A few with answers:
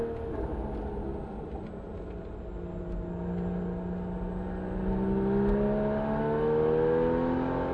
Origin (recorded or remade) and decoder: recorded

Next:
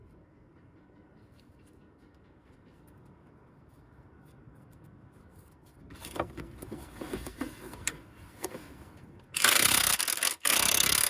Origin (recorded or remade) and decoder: remade, codec, SNAC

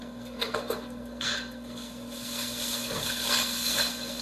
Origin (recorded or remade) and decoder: remade, codec, SNAC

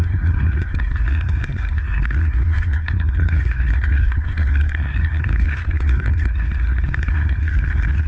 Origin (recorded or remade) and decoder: remade, codec, SNAC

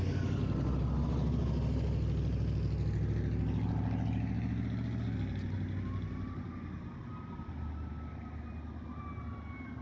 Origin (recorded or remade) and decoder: recorded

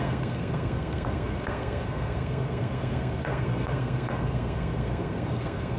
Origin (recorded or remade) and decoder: remade, codec, SNAC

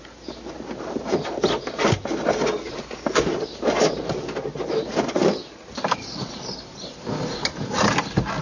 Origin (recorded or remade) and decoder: recorded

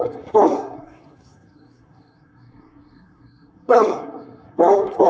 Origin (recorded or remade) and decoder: remade, codec, SNAC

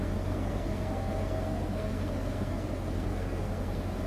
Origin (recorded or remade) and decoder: remade, codec, SNAC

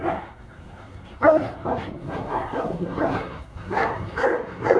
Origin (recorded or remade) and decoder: remade, codec, SNAC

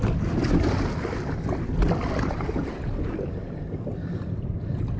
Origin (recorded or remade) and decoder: recorded